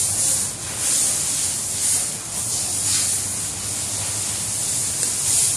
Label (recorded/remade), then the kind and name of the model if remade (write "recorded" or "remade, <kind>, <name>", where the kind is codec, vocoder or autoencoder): recorded